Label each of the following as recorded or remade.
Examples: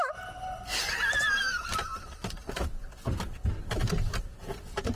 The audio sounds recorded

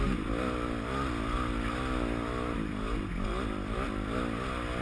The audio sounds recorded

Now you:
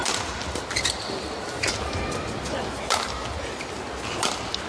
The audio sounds recorded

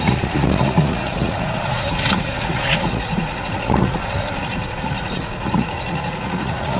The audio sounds remade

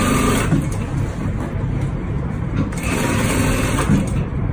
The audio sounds recorded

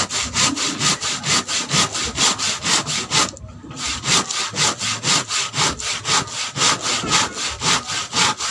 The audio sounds recorded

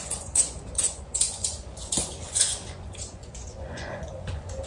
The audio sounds remade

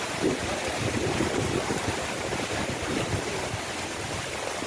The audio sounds remade